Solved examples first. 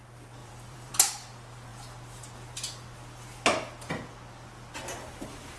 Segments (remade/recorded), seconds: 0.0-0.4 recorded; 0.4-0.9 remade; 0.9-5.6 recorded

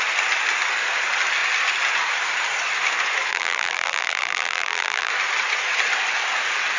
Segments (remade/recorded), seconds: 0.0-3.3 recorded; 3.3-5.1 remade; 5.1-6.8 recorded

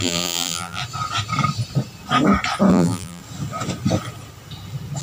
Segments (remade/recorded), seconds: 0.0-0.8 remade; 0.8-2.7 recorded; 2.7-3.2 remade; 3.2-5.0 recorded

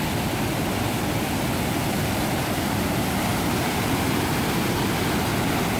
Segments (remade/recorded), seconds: 0.0-3.3 recorded; 3.3-4.8 remade; 4.8-5.8 recorded

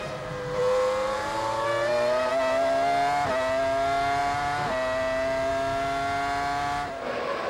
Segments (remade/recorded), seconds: 0.0-1.0 recorded; 1.0-2.3 remade; 2.3-7.5 recorded

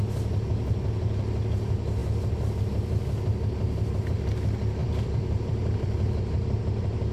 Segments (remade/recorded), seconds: 0.0-4.8 recorded; 4.8-6.4 remade; 6.4-7.1 recorded